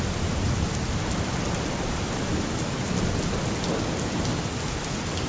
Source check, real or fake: real